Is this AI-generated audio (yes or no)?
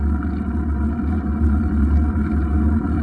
no